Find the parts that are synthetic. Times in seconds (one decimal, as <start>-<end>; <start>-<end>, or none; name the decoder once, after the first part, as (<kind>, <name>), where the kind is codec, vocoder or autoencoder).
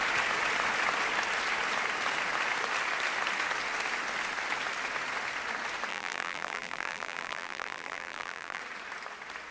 5.9-8.6 (vocoder, BigVGAN v2)